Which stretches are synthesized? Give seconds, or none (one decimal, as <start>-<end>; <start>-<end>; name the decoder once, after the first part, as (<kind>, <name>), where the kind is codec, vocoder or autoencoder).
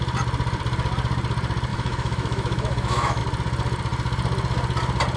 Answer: 1.7-3.2 (autoencoder, DAC-VAE)